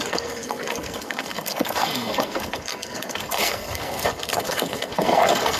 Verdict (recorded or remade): remade